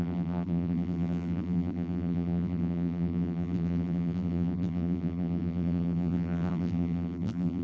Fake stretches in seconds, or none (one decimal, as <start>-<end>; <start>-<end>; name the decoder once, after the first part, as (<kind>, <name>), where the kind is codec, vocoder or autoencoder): 0.0-7.6 (vocoder, BigVGAN v2)

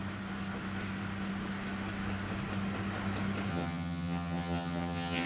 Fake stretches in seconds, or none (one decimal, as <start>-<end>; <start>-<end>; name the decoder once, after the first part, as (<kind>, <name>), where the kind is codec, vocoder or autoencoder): 3.5-5.3 (vocoder, HiFi-GAN)